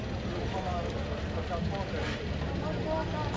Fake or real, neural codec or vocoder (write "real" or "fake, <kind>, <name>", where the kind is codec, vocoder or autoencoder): real